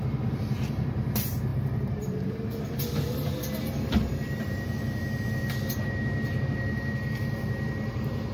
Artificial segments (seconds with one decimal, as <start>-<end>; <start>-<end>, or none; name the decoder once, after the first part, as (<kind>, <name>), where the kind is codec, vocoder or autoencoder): 0.0-8.3 (vocoder, BigVGAN v2)